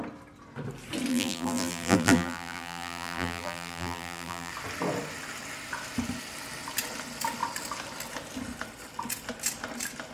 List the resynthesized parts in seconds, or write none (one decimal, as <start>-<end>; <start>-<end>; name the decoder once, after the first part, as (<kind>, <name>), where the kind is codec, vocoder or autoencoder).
1.1-4.5 (vocoder, BigVGAN v2)